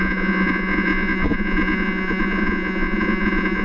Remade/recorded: remade